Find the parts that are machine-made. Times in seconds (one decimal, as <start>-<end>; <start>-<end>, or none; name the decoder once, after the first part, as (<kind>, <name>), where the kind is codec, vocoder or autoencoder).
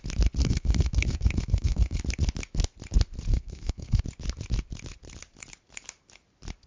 0.4-2.0 (codec, SNAC); 3.3-4.0